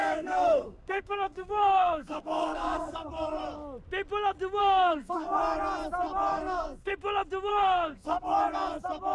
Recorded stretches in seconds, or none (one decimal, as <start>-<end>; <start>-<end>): 3.4-4.6; 5.4-6.3; 6.9-7.5; 8.4-9.1